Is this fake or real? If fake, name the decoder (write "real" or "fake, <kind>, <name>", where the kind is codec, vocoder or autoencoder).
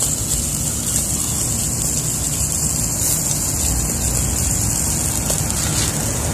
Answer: real